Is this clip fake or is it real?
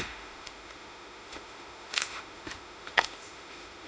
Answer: fake